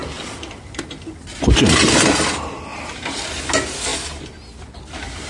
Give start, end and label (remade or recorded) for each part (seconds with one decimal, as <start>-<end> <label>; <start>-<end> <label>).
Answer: 0.0-5.3 recorded